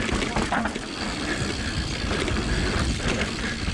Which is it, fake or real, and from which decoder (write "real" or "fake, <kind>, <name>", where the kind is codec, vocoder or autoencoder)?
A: real